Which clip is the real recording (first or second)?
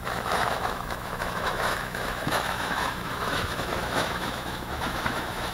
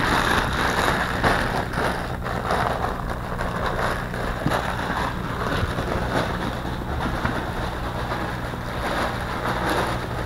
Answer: second